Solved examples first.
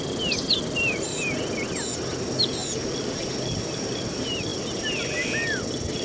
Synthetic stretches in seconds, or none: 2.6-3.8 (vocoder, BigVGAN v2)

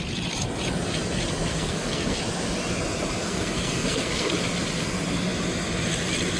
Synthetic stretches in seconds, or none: 1.5-2.2 (codec, SNAC); 3.2-4.3